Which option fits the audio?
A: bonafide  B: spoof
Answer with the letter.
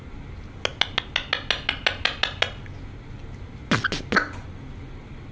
A